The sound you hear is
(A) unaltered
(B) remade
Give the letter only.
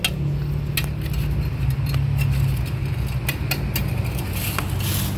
A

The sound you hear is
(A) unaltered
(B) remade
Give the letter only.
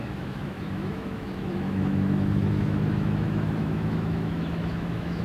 B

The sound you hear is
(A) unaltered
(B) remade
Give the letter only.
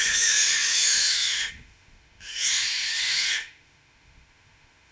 B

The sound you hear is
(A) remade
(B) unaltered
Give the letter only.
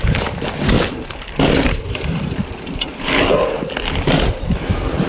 B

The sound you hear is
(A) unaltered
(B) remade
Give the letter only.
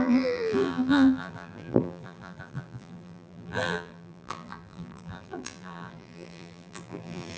B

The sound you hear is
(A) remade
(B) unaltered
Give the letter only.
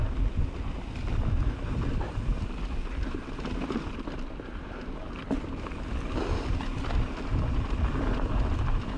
B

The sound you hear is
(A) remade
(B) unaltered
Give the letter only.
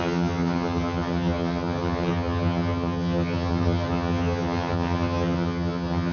A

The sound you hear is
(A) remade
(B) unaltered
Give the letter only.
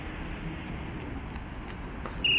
B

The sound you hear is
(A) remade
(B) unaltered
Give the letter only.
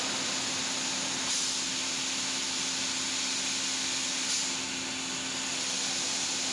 B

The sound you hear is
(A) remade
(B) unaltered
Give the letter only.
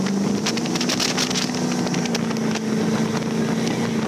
B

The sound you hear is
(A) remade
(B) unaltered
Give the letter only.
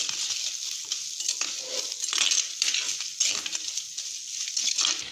B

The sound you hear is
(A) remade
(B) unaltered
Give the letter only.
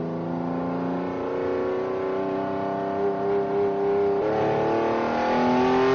B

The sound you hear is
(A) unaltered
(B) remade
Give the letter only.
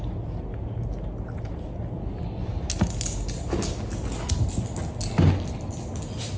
A